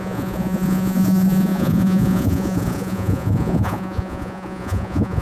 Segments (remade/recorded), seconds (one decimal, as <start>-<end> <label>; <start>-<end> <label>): 0.0-5.2 remade